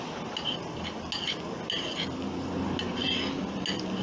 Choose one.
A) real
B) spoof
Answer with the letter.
A